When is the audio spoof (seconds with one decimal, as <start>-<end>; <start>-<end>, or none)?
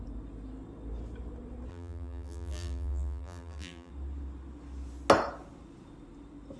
1.7-3.9